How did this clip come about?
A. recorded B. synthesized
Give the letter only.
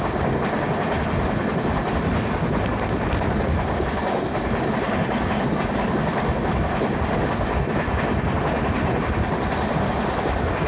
A